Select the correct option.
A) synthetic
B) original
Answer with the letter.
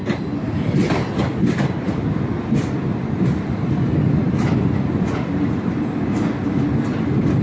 B